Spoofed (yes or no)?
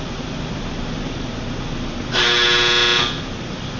no